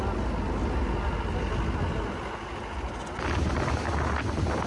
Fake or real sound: real